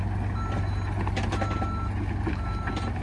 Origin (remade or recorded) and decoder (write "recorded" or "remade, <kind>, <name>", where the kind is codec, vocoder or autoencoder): recorded